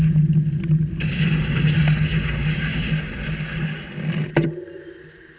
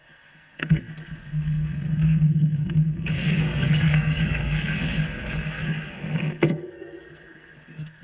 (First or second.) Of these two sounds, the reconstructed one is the second